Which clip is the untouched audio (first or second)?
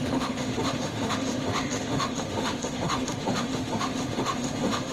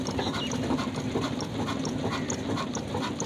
second